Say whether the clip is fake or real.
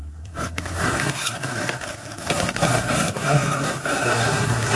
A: fake